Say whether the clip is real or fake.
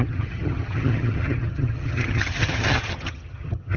fake